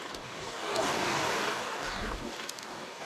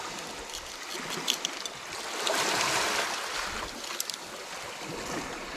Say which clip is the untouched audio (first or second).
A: second